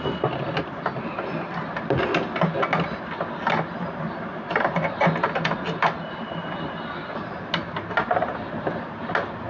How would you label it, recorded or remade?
recorded